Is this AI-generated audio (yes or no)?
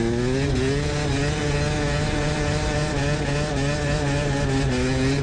no